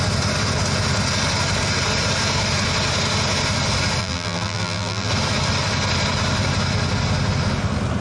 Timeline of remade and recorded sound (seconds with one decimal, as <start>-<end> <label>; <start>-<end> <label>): 0.0-4.0 recorded; 4.0-5.1 remade; 5.1-8.0 recorded